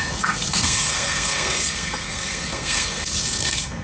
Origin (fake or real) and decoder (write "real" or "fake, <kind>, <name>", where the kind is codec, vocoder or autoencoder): fake, codec, SNAC